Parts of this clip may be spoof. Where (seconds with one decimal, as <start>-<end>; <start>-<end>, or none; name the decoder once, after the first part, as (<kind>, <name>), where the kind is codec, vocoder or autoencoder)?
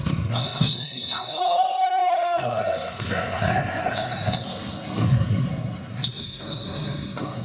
0.0-7.4 (codec, SNAC)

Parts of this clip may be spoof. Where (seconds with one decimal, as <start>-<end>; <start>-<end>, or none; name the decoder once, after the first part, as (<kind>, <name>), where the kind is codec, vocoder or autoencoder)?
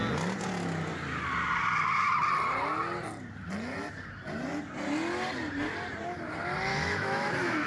6.7-7.7 (autoencoder, DAC-VAE)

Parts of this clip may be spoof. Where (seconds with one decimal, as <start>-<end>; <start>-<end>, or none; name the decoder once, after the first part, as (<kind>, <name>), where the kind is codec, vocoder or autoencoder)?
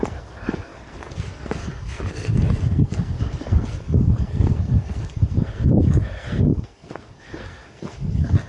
0.0-8.5 (codec, SNAC)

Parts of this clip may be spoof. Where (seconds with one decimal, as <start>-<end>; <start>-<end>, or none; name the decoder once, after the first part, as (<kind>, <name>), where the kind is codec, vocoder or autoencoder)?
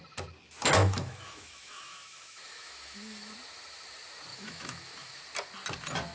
0.8-3.3 (autoencoder, DAC-VAE); 4.3-5.2